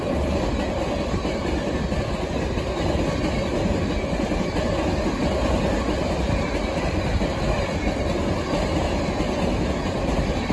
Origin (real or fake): real